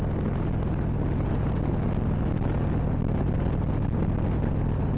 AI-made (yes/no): no